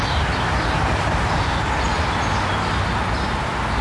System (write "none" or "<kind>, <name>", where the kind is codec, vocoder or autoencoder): none